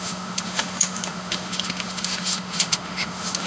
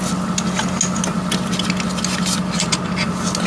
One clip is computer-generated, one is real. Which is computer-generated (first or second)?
first